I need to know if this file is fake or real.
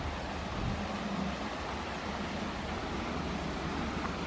real